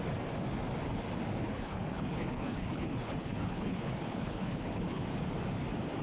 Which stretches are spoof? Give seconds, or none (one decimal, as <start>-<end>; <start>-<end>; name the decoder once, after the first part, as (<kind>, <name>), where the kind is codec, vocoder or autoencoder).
1.4-5.0 (codec, HILCodec)